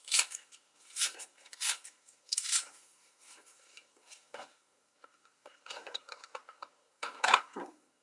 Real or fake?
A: fake